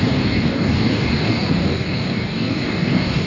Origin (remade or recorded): remade